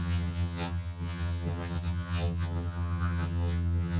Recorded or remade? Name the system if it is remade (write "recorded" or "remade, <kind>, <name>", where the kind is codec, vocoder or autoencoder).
remade, vocoder, HiFi-GAN